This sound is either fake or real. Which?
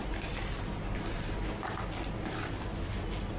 real